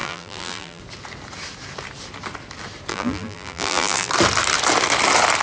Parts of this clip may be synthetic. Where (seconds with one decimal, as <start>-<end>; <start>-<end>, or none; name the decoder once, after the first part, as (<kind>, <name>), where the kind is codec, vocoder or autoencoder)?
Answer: 0.0-0.8 (vocoder, BigVGAN v2); 2.9-4.1